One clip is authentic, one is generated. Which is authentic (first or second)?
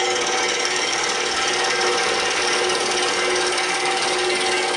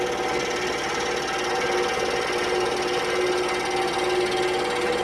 second